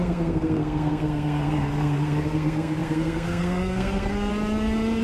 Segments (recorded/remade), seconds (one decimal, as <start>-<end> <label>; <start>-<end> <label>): 0.0-4.3 remade; 4.3-5.0 recorded